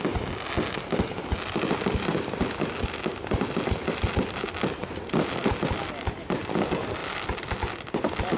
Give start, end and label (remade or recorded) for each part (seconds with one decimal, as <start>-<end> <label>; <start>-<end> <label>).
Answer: 0.0-8.4 recorded